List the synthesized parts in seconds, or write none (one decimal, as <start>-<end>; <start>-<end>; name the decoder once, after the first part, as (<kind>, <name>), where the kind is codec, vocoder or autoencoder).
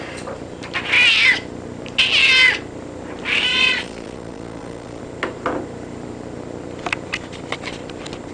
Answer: 3.5-5.0 (vocoder, Vocos)